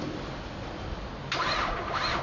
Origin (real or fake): real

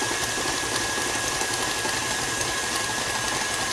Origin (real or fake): real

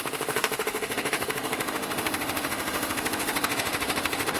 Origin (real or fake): fake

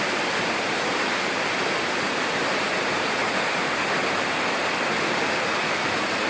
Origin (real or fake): real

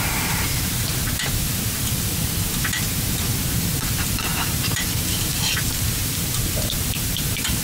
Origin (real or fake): fake